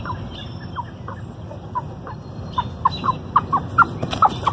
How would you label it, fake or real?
real